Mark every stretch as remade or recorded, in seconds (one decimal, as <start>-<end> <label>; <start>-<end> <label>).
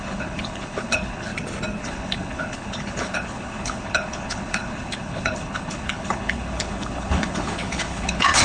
0.0-1.3 remade; 1.3-1.8 recorded; 1.8-8.4 remade